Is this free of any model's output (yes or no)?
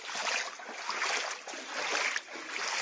yes